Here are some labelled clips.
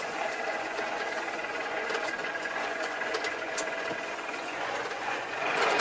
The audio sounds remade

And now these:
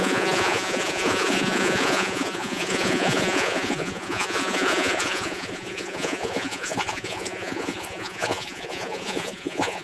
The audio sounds remade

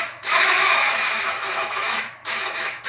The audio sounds remade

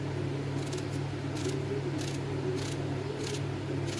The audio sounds recorded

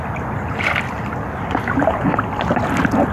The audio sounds recorded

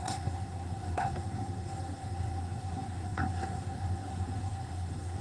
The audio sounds remade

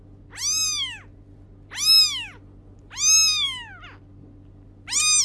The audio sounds recorded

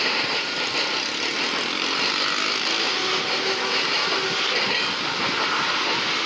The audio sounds recorded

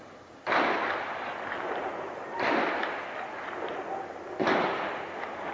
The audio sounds recorded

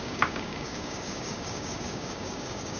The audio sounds remade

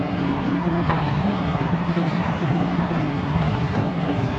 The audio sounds remade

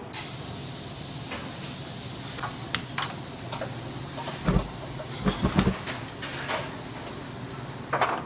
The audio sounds recorded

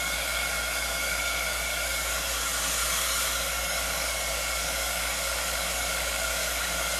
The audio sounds remade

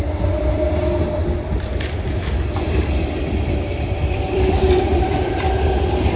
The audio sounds remade